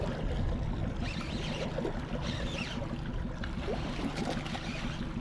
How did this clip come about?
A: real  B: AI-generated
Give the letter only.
A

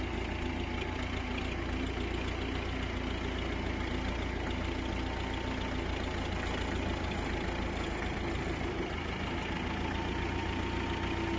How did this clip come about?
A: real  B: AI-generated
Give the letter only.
A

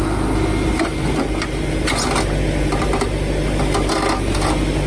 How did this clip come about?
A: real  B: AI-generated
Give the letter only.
A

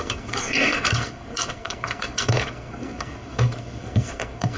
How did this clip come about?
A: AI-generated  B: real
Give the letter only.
A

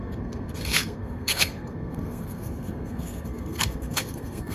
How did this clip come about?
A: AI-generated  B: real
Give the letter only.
A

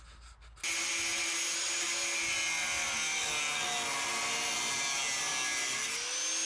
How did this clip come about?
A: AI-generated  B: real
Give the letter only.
B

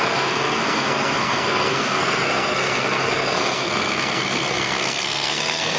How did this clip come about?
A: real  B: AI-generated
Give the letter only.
B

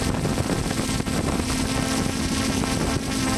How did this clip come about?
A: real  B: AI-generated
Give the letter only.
A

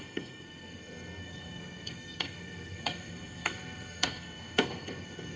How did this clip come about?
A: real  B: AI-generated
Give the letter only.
B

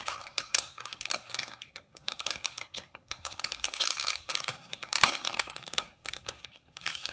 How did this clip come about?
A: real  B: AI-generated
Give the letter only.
B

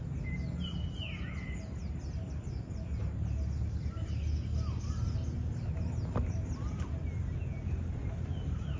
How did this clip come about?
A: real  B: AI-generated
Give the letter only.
A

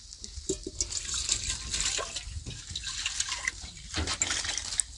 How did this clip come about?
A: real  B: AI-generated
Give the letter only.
A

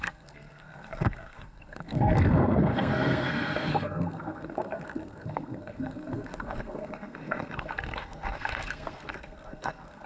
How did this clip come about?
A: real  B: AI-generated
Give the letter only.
B